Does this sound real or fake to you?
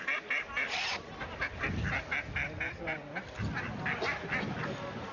real